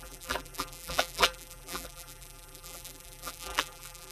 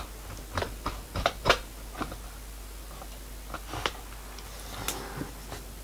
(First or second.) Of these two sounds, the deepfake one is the first